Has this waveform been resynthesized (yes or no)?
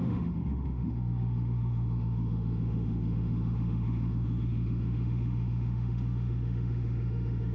yes